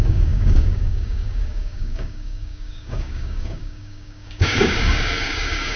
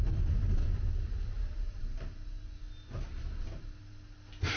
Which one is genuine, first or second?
second